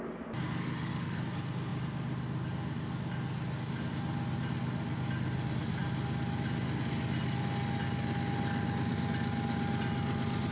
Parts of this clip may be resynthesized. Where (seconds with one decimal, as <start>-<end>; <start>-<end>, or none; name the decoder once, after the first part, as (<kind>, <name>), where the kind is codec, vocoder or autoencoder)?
0.6-1.2 (autoencoder, DAC-VAE)